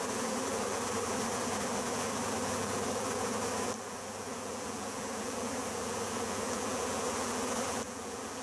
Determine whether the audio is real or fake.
fake